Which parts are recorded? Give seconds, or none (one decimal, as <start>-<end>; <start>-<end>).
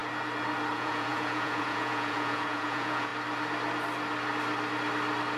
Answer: 0.0-0.7; 3.1-5.4